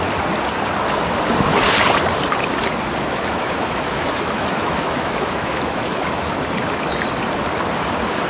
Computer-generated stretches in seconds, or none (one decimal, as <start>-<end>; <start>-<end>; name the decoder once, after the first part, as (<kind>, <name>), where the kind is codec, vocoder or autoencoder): 3.1-6.0 (autoencoder, DAC-VAE)